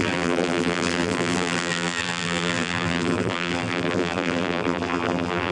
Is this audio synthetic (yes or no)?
yes